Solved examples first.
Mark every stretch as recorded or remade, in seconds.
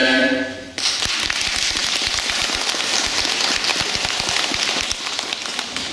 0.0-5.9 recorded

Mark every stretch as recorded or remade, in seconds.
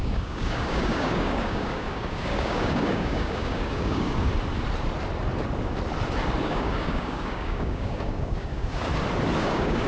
0.0-4.3 remade; 4.3-6.4 recorded; 6.4-8.9 remade; 8.9-9.4 recorded; 9.4-9.9 remade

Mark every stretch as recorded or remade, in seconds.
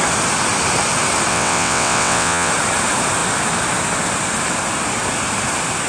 0.0-1.3 recorded; 1.3-2.5 remade; 2.5-5.9 recorded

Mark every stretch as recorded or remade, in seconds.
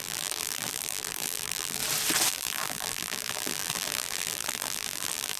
0.0-1.8 remade; 1.8-2.3 recorded; 2.3-5.4 remade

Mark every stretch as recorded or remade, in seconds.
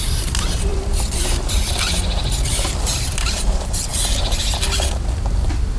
0.0-3.9 remade; 3.9-5.8 recorded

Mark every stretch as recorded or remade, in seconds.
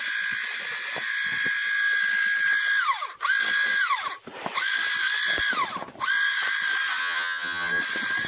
0.0-7.0 recorded; 7.0-7.8 remade; 7.8-8.3 recorded